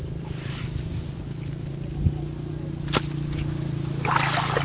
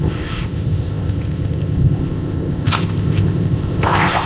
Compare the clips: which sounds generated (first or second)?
second